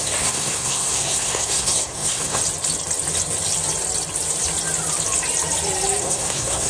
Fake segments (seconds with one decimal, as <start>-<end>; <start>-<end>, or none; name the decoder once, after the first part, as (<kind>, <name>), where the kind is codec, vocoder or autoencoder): 0.0-2.4 (codec, SNAC); 6.0-6.7